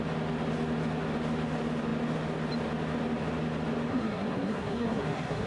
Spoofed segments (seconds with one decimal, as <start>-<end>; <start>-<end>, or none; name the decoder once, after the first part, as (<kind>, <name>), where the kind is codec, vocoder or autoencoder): 3.9-5.5 (codec, SNAC)